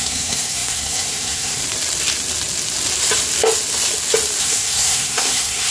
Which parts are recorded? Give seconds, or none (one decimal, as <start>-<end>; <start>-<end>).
1.6-4.4

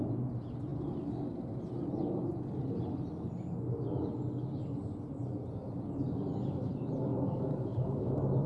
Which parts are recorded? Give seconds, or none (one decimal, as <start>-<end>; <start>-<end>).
0.0-7.1; 8.1-8.5

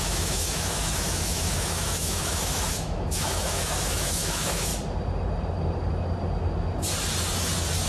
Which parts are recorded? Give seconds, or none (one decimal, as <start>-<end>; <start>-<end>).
4.7-7.9